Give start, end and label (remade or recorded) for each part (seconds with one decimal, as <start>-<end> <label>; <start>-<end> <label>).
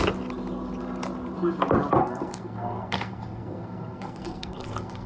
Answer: 0.0-2.0 recorded; 2.0-5.1 remade